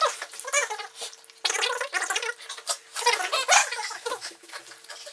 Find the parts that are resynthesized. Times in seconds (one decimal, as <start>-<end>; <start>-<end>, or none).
3.6-4.6